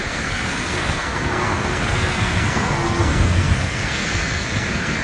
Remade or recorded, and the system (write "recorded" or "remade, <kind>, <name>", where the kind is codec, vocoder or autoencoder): remade, codec, SNAC